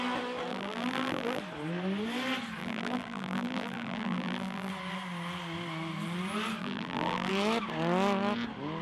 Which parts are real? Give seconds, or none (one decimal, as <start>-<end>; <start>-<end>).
0.0-0.5; 1.4-2.6; 4.7-6.6; 7.3-8.8